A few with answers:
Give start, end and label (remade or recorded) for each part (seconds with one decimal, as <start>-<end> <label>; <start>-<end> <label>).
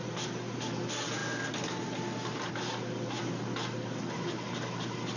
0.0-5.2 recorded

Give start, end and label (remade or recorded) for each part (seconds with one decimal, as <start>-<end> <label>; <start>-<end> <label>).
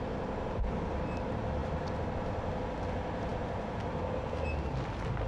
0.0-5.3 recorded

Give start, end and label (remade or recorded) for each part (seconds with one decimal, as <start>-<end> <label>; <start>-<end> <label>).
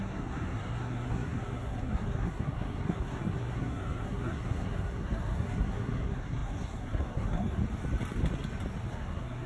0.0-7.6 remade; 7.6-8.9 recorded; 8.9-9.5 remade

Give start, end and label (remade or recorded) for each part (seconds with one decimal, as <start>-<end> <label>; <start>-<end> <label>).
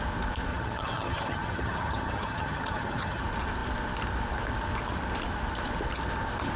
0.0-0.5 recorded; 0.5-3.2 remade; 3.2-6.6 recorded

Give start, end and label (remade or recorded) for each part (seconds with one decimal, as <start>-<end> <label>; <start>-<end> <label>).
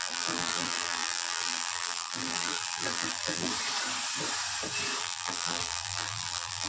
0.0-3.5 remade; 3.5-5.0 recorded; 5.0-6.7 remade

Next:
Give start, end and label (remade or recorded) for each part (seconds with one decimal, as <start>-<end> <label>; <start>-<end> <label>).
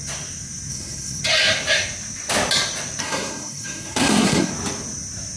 0.0-0.7 recorded; 0.7-1.2 remade; 1.2-3.0 recorded; 3.0-4.5 remade; 4.5-5.4 recorded